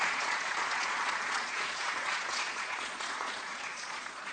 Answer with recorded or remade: remade